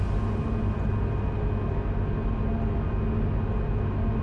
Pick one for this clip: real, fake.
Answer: real